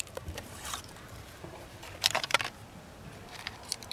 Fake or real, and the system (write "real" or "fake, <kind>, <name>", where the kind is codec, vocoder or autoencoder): fake, vocoder, BigVGAN v2